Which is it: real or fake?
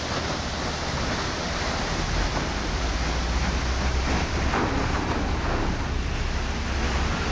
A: real